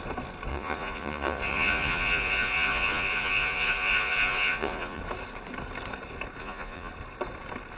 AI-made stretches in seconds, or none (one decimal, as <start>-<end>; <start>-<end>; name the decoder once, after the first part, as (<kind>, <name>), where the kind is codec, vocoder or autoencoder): 0.5-5.0 (vocoder, Vocos); 6.4-6.9